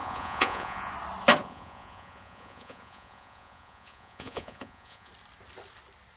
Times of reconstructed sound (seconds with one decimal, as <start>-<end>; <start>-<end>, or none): 0.0-0.9; 1.4-5.1